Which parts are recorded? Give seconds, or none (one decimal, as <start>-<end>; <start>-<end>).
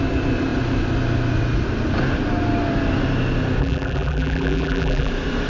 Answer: 0.0-3.6; 5.1-5.5